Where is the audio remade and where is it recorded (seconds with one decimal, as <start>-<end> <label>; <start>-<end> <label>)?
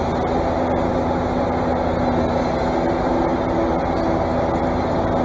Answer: 0.0-5.2 recorded